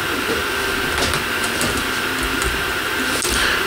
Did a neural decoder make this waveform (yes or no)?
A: no